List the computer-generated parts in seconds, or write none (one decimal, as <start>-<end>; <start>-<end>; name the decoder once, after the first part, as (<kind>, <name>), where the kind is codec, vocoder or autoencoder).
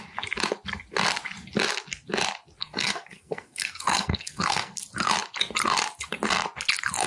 2.6-4.8 (codec, SNAC)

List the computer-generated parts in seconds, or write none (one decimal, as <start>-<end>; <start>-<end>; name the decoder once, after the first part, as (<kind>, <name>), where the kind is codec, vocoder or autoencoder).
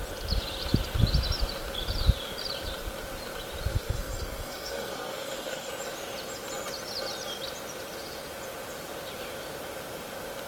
3.7-5.7 (codec, SNAC)